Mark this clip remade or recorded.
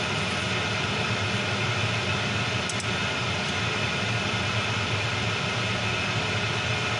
recorded